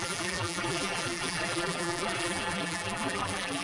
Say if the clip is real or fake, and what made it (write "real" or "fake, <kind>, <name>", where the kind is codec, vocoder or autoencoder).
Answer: fake, vocoder, BigVGAN v2